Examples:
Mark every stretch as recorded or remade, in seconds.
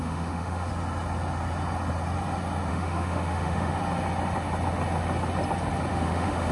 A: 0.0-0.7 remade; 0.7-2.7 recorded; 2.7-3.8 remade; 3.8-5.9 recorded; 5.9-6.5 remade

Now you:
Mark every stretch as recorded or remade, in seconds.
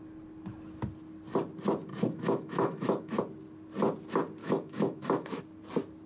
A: 0.0-1.9 recorded; 1.9-3.2 remade; 3.2-4.4 recorded; 4.4-5.4 remade; 5.4-6.1 recorded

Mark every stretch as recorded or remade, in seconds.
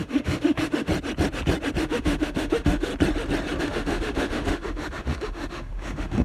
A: 0.0-0.9 remade; 0.9-1.8 recorded; 1.8-2.9 remade; 2.9-3.6 recorded; 3.6-6.2 remade